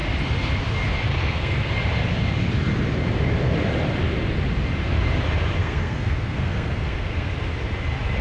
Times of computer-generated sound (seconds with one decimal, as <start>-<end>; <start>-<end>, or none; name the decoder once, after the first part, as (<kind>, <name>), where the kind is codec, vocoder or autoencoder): 1.1-1.7 (codec, SNAC); 5.6-7.3